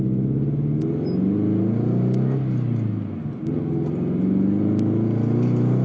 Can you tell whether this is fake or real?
real